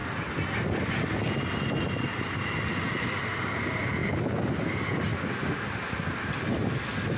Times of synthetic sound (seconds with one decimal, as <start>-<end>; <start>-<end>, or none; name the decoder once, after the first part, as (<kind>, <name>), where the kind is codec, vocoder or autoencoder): none